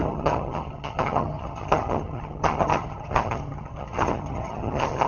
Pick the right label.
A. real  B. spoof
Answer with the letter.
B